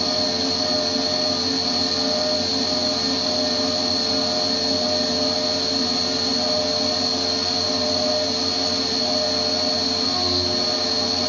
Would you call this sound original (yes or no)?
yes